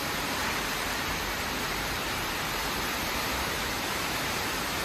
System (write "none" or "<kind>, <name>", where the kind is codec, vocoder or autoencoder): vocoder, BigVGAN v2